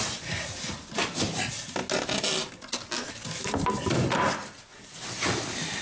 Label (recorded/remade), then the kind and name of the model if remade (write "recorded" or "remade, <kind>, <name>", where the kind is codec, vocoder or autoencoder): recorded